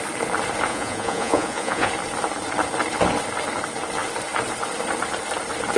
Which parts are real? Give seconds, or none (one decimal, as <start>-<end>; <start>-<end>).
0.0-0.7; 1.9-5.8